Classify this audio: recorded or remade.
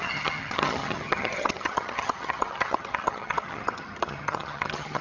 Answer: remade